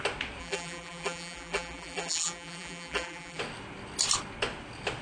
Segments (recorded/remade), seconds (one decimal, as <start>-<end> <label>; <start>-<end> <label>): 0.0-0.4 recorded; 0.4-3.4 remade; 3.4-5.0 recorded